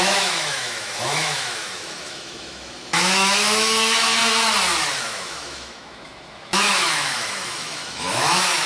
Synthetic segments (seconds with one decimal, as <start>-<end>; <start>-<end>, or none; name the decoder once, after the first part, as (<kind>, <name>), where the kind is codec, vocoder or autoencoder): 0.0-4.2 (autoencoder, DAC-VAE); 5.0-8.7